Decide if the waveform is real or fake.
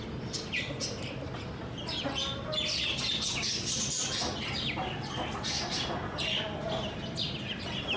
real